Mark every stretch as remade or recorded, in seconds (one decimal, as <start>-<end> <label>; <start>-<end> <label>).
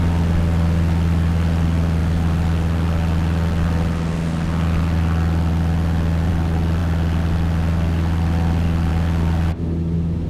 0.0-10.3 recorded